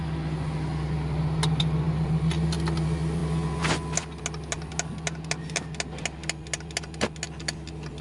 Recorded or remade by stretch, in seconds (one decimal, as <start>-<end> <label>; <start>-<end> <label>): 0.0-8.0 recorded